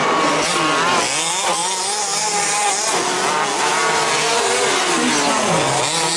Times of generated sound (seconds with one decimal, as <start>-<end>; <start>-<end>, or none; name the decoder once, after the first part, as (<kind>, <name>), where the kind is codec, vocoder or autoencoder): none